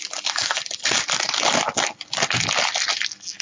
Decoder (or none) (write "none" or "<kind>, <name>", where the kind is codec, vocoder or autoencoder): none